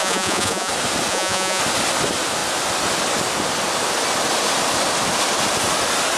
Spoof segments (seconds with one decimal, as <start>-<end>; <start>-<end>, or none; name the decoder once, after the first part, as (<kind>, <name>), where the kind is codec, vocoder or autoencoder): 0.0-0.7 (vocoder, Vocos); 1.1-1.6